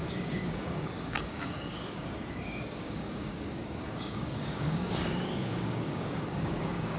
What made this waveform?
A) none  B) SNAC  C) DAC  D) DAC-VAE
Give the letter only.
C